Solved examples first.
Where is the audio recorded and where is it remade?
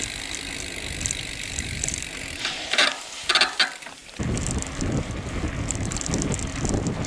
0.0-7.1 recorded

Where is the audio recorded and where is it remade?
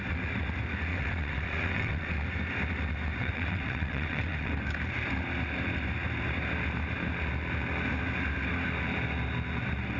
0.0-0.9 recorded; 0.9-2.1 remade; 2.1-3.2 recorded; 3.2-4.5 remade; 4.5-10.0 recorded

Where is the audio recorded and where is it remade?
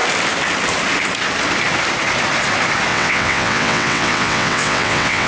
0.0-2.9 recorded; 2.9-5.3 remade